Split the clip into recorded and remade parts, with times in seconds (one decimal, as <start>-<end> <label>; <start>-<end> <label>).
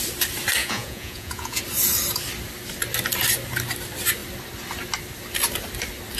0.0-0.6 recorded; 0.6-1.6 remade; 1.6-6.2 recorded